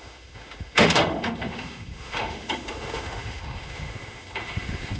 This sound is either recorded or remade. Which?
remade